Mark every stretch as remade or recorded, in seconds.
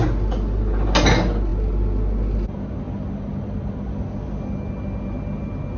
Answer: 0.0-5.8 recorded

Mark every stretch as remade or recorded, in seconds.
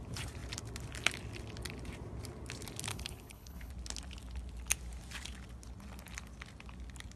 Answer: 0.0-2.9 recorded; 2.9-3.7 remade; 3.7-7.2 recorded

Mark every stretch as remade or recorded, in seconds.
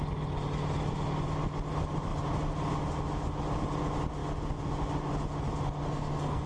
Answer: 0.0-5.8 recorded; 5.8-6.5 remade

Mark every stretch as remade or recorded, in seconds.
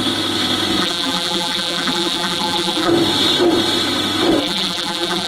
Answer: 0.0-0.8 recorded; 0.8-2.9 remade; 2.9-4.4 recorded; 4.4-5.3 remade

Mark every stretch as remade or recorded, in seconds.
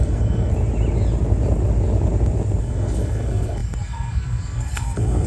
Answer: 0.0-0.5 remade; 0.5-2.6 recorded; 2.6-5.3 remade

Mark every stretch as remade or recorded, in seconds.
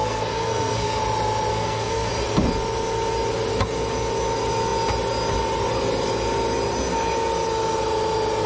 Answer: 0.0-1.0 remade; 1.0-1.5 recorded; 1.5-2.1 remade; 2.1-8.5 recorded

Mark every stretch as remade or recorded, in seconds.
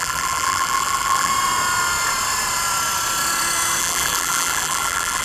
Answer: 0.0-1.3 remade; 1.3-3.8 recorded; 3.8-5.2 remade